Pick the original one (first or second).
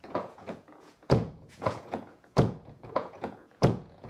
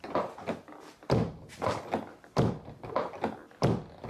second